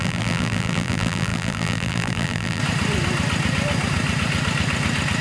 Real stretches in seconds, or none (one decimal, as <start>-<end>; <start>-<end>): 2.6-5.2